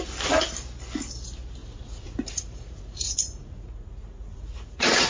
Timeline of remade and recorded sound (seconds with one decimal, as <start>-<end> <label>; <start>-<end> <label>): 0.0-1.6 recorded; 1.6-5.1 remade